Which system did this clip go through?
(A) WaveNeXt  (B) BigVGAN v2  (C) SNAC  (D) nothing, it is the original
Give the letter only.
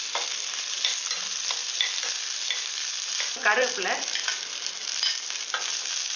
B